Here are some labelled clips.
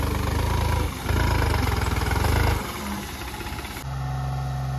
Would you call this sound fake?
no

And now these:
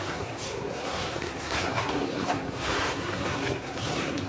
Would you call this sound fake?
yes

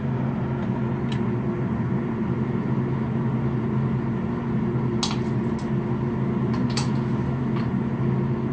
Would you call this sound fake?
no